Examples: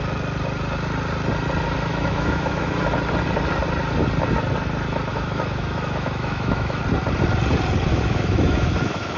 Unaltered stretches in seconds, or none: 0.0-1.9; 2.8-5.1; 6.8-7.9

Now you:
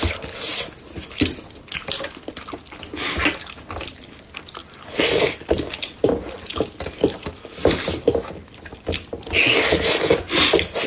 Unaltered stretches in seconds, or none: 0.0-10.9

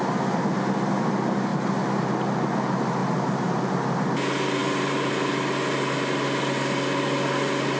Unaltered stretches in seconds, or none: 0.0-1.5; 2.0-3.0; 3.5-4.6; 5.3-7.8

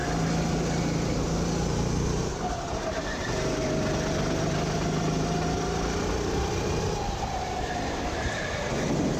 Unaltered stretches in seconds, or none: 0.0-9.2

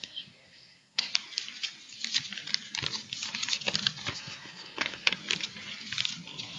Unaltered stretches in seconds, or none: 1.1-4.1; 5.2-6.6

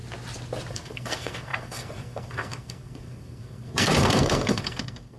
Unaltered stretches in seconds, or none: 0.0-0.7

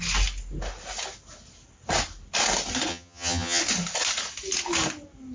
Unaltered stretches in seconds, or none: 0.0-2.9; 3.6-5.3

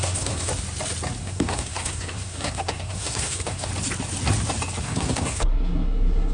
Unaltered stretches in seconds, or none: 0.5-1.2; 3.7-4.8